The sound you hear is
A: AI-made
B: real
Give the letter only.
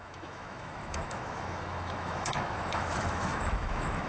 A